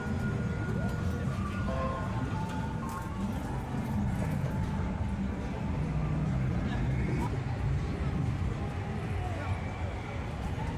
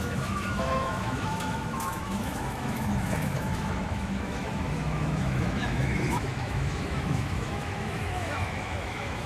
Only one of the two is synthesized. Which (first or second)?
second